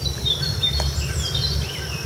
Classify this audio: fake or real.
fake